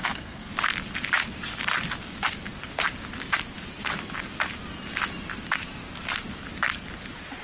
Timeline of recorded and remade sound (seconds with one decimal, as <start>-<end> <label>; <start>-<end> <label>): 0.0-0.5 remade; 0.5-7.4 recorded